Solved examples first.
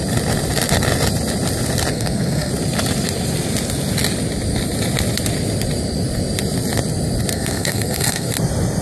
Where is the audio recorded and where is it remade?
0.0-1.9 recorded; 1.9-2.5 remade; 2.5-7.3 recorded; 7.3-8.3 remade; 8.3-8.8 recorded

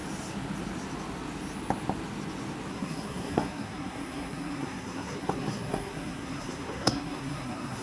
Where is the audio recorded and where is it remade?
0.0-2.7 recorded; 2.7-7.8 remade

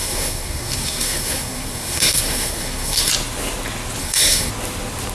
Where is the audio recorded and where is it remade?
0.0-3.1 remade; 3.1-4.0 recorded; 4.0-4.5 remade; 4.5-5.1 recorded

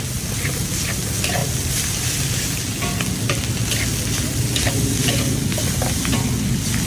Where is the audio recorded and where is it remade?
0.0-6.9 recorded